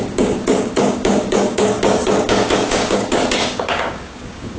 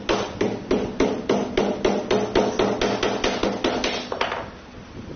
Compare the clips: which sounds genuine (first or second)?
second